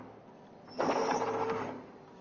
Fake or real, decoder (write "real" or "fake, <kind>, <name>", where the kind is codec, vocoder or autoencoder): real